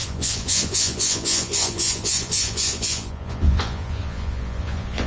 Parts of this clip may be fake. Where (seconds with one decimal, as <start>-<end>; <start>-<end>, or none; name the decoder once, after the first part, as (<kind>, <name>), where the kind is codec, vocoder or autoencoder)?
0.0-5.1 (vocoder, Vocos)